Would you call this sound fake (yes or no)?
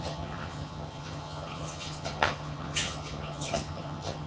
yes